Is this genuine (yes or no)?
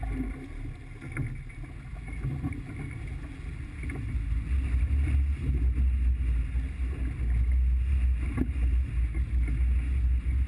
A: yes